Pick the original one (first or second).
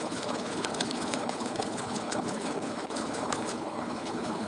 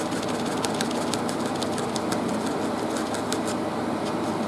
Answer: second